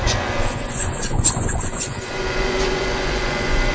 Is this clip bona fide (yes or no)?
no